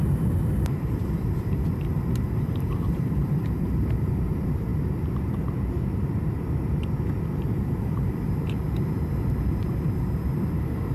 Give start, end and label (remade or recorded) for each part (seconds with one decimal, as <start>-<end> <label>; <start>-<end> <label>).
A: 0.0-10.9 remade